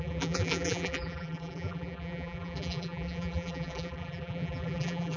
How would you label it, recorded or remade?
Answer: remade